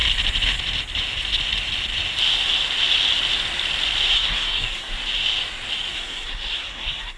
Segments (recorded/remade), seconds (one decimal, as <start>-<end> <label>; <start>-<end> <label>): 0.0-4.1 recorded; 4.1-4.9 remade; 4.9-5.9 recorded; 5.9-7.2 remade